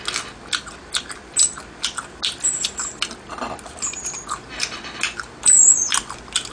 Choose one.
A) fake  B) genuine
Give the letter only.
B